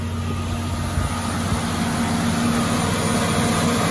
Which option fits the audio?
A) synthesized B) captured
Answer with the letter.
B